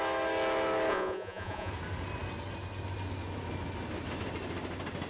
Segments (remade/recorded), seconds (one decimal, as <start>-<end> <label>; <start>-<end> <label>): 0.0-0.9 recorded; 0.9-1.7 remade; 1.7-5.1 recorded